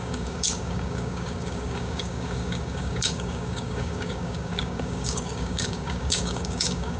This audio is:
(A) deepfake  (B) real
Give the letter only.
A